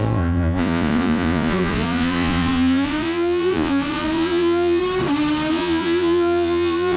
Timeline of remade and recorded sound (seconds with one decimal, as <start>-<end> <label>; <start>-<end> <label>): 0.0-4.8 remade; 4.8-5.5 recorded; 5.5-7.0 remade